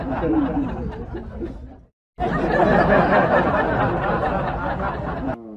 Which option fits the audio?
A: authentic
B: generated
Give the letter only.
A